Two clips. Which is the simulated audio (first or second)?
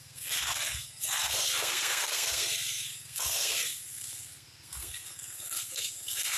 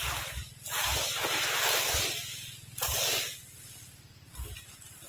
first